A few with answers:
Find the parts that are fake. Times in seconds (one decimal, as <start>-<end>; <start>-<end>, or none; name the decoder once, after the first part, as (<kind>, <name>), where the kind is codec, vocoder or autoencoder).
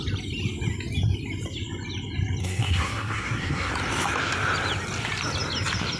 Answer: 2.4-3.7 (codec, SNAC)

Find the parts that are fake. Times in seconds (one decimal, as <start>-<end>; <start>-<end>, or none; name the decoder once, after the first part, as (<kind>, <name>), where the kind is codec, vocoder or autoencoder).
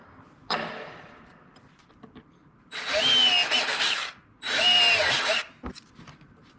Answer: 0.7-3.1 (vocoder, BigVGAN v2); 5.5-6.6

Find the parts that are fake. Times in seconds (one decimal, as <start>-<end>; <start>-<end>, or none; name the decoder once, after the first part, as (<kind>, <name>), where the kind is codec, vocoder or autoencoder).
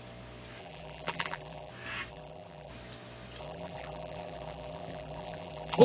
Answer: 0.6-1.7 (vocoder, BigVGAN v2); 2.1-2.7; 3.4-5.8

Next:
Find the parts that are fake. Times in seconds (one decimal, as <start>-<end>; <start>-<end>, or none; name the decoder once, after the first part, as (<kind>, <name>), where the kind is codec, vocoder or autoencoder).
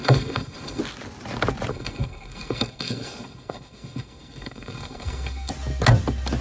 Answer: 0.0-0.8 (codec, SNAC); 1.7-5.5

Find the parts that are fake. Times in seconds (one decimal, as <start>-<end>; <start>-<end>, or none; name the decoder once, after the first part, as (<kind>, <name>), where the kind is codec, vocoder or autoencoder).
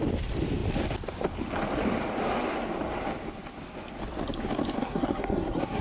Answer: 4.8-5.8 (codec, SNAC)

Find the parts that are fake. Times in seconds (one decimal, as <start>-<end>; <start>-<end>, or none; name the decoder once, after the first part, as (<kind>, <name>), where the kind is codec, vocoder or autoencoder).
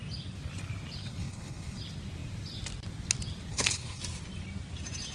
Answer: 1.0-1.8 (codec, HILCodec); 3.5-4.0